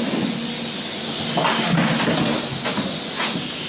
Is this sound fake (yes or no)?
no